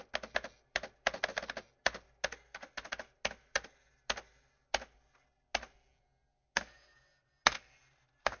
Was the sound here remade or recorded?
recorded